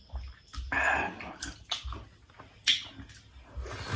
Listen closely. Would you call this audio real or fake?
real